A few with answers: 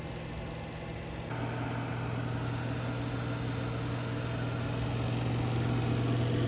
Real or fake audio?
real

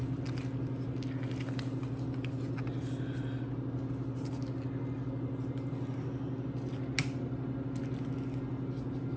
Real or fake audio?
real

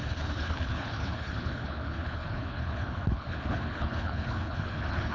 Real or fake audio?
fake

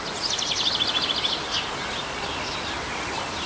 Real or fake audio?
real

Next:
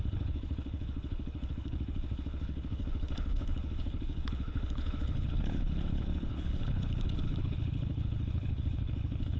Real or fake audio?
fake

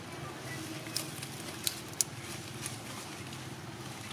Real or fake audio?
real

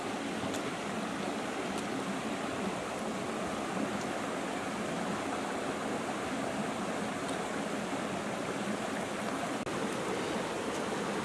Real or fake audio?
real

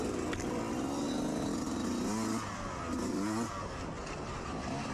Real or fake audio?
real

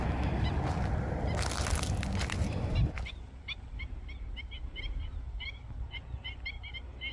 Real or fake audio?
real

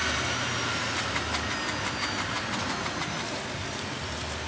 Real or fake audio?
real